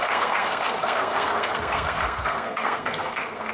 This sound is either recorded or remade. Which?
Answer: remade